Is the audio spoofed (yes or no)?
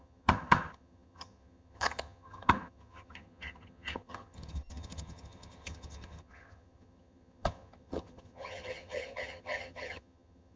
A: yes